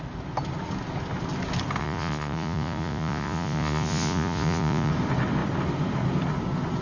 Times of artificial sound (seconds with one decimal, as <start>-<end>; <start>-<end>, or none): 1.8-4.9